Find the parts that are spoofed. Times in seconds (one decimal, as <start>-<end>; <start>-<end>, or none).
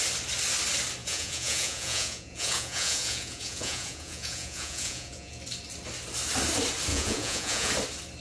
1.0-5.4; 6.9-7.7